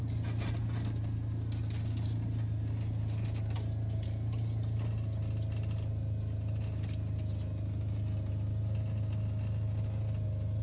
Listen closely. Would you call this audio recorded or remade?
recorded